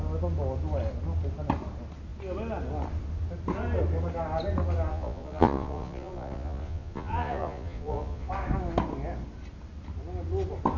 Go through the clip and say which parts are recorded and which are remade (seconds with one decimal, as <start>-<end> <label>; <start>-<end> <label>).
0.0-4.9 recorded; 4.9-8.3 remade; 8.3-10.8 recorded